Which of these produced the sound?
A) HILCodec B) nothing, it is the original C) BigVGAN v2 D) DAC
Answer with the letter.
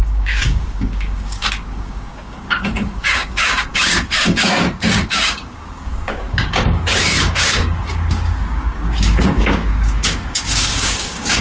D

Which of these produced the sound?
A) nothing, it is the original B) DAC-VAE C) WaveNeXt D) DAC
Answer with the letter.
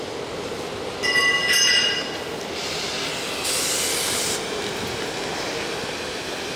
A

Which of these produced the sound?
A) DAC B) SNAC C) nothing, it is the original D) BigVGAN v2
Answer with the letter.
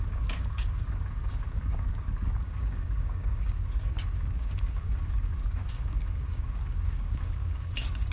A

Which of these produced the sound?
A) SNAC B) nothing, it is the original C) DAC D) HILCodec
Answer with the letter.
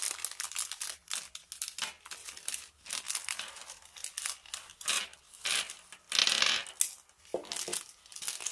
B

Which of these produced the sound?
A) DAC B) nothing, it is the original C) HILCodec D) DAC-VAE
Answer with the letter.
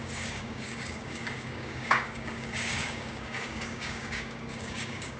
A